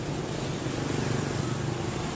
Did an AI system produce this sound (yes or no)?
no